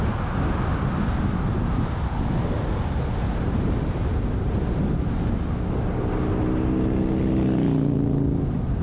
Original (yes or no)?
yes